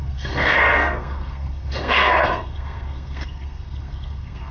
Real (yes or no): no